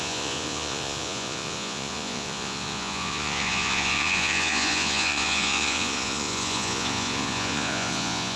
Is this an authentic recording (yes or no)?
no